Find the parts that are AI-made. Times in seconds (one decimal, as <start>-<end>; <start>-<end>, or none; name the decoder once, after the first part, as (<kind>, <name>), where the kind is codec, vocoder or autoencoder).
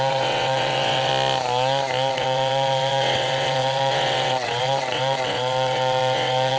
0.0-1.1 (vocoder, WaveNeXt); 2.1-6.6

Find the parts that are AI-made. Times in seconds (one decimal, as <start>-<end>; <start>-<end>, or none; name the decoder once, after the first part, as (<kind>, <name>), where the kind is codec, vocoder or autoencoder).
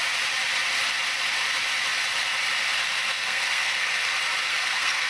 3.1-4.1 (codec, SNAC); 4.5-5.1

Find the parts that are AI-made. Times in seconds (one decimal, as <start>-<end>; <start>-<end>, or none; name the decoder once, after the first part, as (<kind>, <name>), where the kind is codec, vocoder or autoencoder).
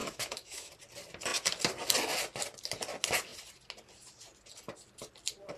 0.0-0.7 (autoencoder, DAC-VAE)